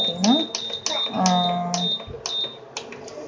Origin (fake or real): real